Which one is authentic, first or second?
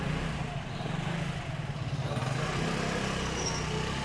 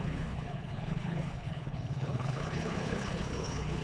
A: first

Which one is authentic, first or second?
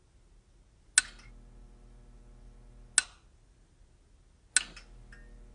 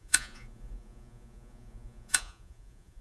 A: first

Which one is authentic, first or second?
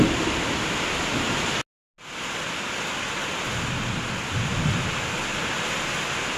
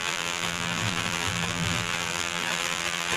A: first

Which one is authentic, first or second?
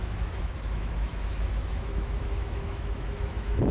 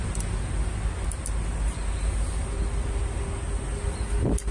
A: second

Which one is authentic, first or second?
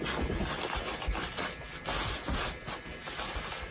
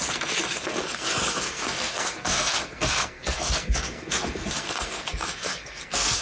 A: first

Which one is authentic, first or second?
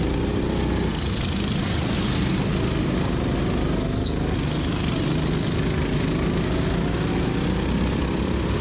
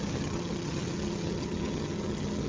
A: first